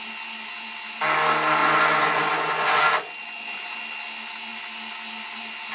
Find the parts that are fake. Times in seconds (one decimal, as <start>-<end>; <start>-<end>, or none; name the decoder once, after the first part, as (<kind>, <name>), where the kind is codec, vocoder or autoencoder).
1.6-2.8 (vocoder, Vocos); 3.2-3.8